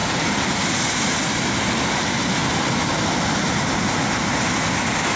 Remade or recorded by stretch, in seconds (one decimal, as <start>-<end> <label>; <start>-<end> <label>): 0.0-5.2 recorded